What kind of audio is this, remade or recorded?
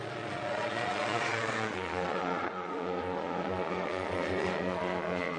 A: remade